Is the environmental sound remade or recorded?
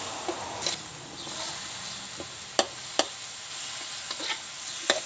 recorded